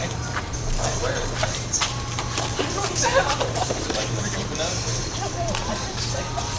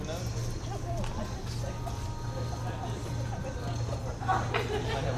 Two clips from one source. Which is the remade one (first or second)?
first